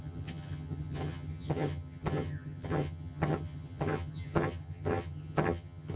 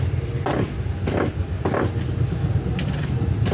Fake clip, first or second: first